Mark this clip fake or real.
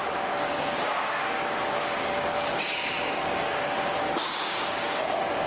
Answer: fake